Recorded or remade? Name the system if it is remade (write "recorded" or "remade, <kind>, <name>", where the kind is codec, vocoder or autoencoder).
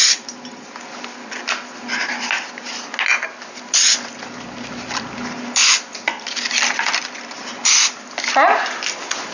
recorded